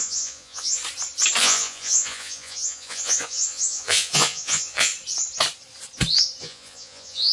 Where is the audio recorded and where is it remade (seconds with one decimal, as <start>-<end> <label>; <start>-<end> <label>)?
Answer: 0.0-0.8 remade; 0.8-1.4 recorded; 1.4-4.9 remade; 4.9-6.4 recorded; 6.4-7.3 remade